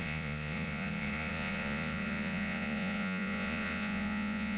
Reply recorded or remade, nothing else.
remade